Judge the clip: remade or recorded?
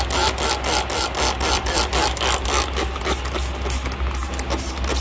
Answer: recorded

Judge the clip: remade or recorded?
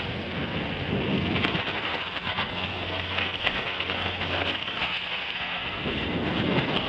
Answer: remade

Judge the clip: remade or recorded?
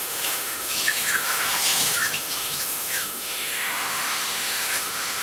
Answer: remade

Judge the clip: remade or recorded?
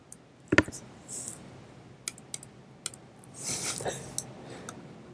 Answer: recorded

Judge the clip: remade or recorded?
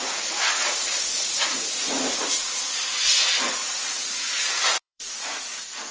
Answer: remade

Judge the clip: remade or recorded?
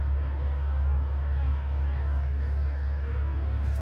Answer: remade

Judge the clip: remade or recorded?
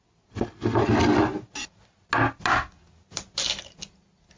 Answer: recorded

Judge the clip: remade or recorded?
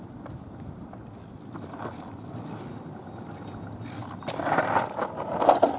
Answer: recorded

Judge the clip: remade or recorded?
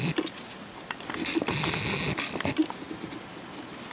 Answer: recorded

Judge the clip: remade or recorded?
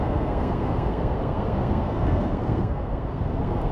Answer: remade